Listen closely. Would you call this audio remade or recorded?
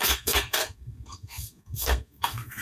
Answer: remade